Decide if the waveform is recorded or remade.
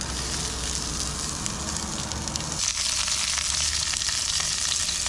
recorded